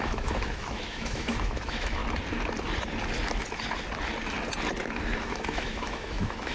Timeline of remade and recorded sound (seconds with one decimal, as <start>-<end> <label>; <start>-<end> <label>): 0.0-2.0 remade; 2.0-5.2 recorded; 5.2-6.5 remade